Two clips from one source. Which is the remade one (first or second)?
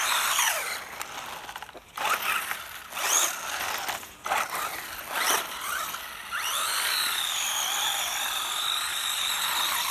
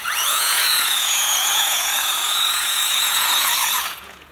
second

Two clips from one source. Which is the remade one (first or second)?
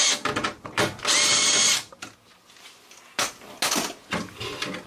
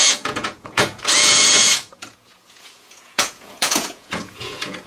second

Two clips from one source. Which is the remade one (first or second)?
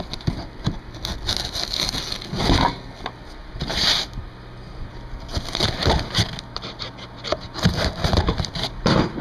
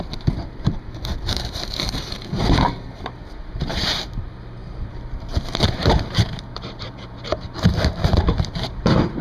second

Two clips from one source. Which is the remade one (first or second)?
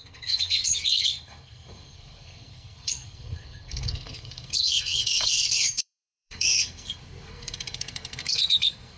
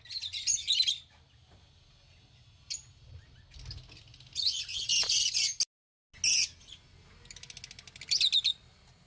first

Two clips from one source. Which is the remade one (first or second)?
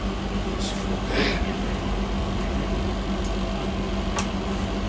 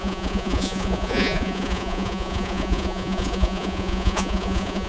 second